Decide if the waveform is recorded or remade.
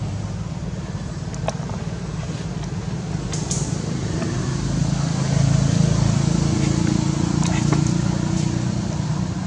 recorded